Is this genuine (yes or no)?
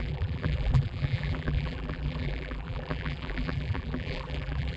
no